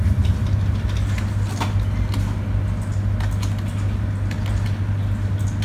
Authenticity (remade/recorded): recorded